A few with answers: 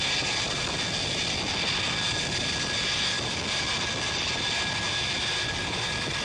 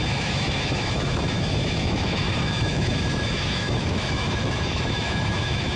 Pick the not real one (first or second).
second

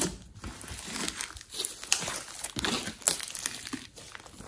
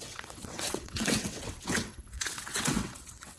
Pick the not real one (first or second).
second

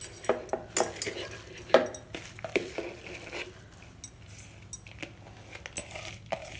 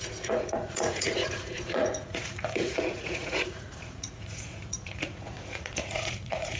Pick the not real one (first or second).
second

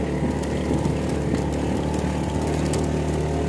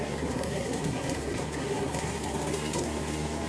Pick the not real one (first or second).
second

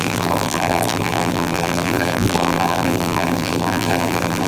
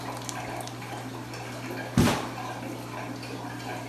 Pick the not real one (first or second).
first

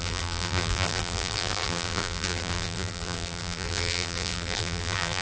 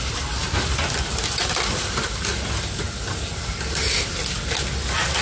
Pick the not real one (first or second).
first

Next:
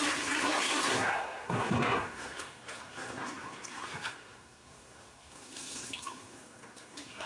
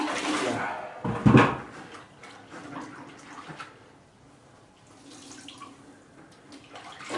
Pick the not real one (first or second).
first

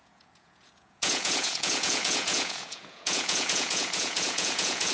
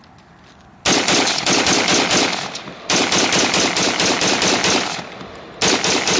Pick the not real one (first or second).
first